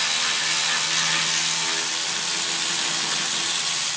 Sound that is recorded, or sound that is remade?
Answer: recorded